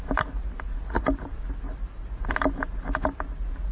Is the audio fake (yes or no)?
no